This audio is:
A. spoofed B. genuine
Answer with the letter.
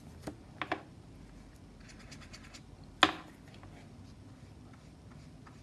B